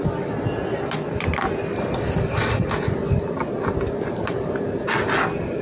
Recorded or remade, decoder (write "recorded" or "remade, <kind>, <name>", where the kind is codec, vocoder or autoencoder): recorded